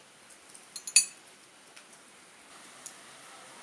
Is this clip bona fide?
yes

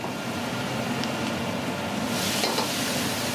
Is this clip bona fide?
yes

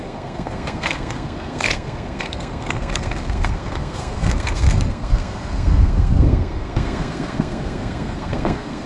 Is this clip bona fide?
no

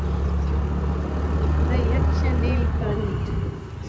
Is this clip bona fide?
yes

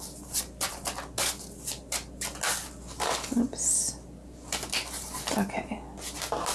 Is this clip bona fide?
yes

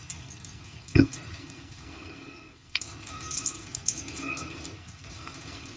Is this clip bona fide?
no